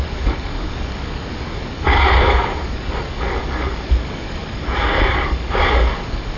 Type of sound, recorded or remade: remade